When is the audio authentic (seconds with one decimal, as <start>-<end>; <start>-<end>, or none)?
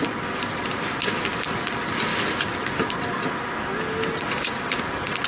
0.0-5.3